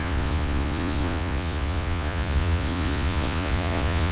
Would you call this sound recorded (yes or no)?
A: no